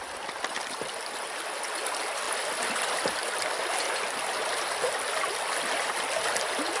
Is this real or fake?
real